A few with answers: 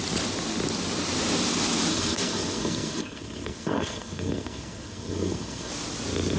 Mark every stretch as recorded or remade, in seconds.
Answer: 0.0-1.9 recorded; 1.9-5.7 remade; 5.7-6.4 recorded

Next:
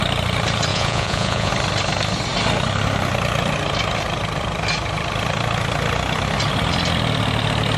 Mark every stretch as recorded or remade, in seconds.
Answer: 0.0-0.7 recorded; 0.7-1.5 remade; 1.5-7.8 recorded

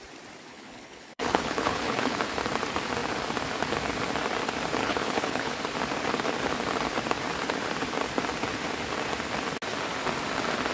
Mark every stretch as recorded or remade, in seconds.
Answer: 0.0-0.5 recorded; 0.5-2.2 remade; 2.2-4.8 recorded; 4.8-5.6 remade; 5.6-10.7 recorded

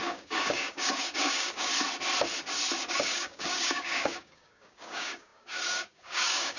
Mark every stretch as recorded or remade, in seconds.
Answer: 0.0-1.7 remade; 1.7-2.9 recorded; 2.9-6.6 remade

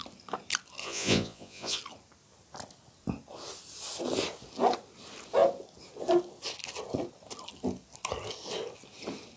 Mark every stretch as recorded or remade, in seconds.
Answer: 0.0-0.8 recorded; 0.8-1.8 remade; 1.8-9.4 recorded

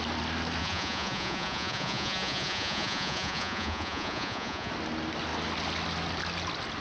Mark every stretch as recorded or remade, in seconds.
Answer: 0.0-0.6 recorded; 0.6-4.7 remade; 4.7-6.8 recorded

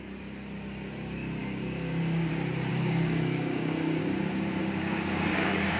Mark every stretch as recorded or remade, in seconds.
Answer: 0.0-1.4 recorded; 1.4-2.3 remade; 2.3-2.7 recorded; 2.7-4.0 remade; 4.0-4.6 recorded; 4.6-5.8 remade

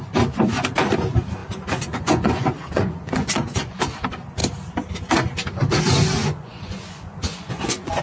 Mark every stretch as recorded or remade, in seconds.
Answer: 0.0-1.4 recorded; 1.4-3.8 remade; 3.8-6.2 recorded; 6.2-8.0 remade